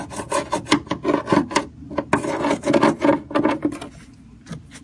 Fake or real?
real